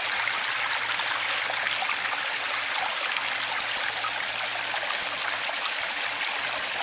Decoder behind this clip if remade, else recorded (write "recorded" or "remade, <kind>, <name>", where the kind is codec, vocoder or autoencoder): recorded